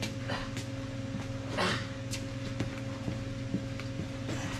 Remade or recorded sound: recorded